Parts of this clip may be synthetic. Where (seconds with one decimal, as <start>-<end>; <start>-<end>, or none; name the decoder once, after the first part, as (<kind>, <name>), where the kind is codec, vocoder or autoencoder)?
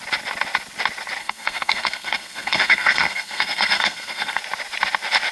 1.2-4.4 (codec, SNAC)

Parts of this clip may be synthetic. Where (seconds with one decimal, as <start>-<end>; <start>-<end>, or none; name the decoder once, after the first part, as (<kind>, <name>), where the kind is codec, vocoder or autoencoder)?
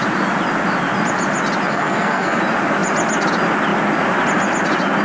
1.7-2.4 (codec, SNAC)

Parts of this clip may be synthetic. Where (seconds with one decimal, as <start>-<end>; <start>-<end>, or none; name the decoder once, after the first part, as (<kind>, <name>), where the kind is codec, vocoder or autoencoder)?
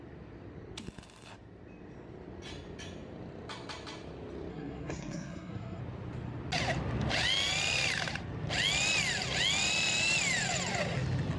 4.5-5.8 (codec, SNAC)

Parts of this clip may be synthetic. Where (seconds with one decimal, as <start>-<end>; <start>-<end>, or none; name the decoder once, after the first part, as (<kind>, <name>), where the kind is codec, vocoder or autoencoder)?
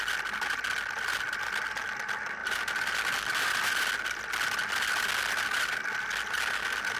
none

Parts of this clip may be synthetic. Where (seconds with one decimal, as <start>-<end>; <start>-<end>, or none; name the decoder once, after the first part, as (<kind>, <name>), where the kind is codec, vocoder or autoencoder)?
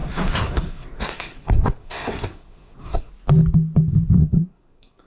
0.0-3.1 (codec, SNAC); 4.2-5.1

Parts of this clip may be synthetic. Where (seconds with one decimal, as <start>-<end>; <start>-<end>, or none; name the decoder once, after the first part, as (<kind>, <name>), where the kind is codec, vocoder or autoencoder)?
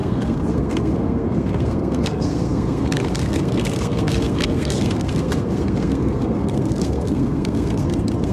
0.0-8.3 (codec, SNAC)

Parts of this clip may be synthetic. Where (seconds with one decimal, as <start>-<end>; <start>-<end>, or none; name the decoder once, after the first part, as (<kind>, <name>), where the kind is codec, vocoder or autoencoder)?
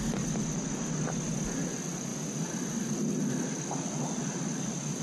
none